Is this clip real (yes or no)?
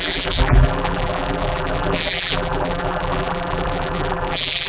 no